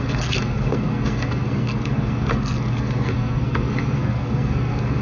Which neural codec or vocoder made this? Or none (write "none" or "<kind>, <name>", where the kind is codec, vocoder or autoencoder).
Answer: codec, SNAC